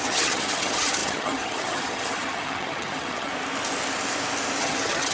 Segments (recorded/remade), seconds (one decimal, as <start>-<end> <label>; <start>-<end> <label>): 0.0-3.3 remade; 3.3-4.6 recorded; 4.6-5.1 remade